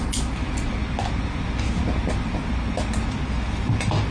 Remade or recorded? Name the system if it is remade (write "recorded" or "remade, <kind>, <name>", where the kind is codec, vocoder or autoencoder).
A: recorded